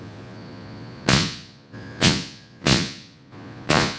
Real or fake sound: fake